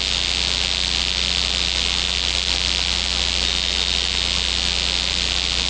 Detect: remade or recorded recorded